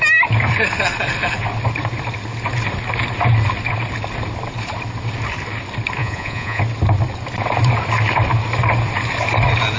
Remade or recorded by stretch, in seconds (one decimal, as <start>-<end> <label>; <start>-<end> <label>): 0.0-6.0 recorded; 6.0-6.6 remade; 6.6-9.8 recorded